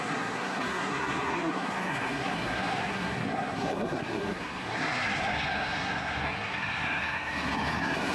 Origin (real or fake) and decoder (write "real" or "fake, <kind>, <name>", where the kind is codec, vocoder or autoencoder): fake, codec, SNAC